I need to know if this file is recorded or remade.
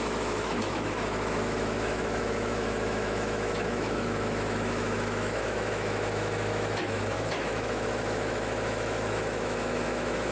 remade